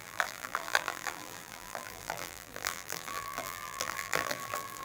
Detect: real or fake fake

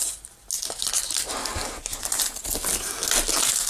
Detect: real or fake real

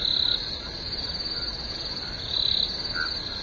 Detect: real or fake real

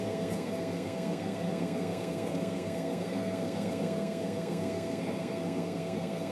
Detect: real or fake fake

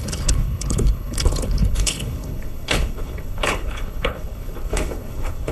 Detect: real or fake fake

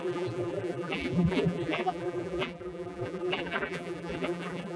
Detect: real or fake fake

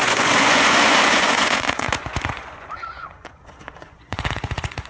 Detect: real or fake fake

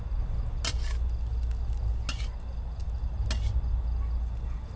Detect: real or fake real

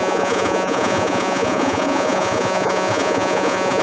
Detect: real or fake fake